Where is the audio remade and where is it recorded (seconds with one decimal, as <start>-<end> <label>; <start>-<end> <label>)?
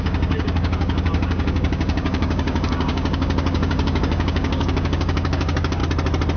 0.0-5.8 remade; 5.8-6.4 recorded